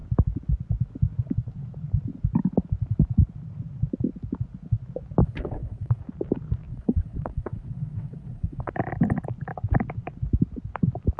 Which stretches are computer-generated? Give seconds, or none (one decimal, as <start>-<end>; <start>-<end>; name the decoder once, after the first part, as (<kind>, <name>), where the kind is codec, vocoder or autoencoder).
5.2-6.0 (vocoder, WaveNeXt); 6.7-8.7